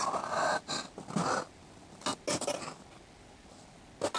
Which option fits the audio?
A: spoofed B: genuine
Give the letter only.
B